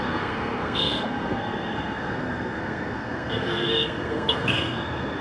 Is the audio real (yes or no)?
no